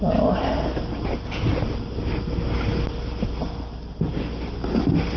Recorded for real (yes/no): yes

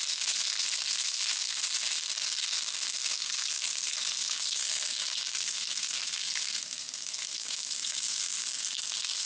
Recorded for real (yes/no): no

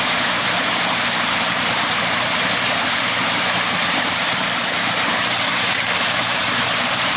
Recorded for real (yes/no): no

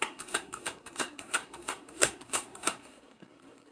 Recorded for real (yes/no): no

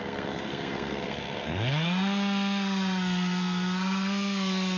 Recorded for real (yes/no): no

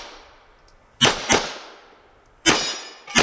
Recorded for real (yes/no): yes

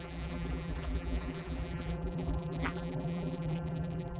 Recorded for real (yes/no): no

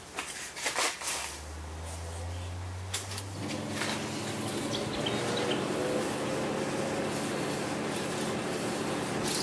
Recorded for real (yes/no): yes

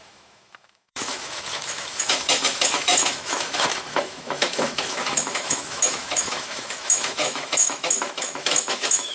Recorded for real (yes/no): no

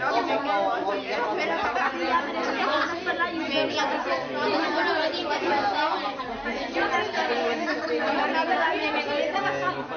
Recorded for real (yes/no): yes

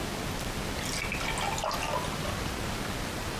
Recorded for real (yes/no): yes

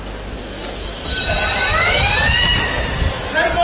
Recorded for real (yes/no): yes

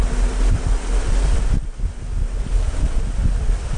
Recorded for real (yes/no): yes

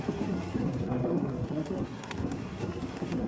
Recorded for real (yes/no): no